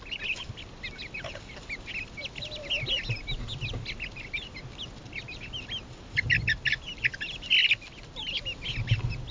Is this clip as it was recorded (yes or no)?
yes